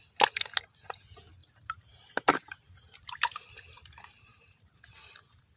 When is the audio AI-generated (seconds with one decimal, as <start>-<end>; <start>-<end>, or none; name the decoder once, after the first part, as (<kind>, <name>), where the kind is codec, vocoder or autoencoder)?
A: 1.4-4.8 (vocoder, BigVGAN v2)